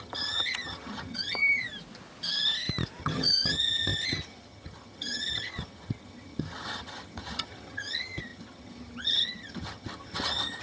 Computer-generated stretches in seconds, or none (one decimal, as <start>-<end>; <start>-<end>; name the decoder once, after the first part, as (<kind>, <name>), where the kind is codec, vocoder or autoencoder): 0.0-1.6 (vocoder, HiFi-GAN); 3.0-10.6